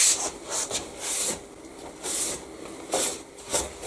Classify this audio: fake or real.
real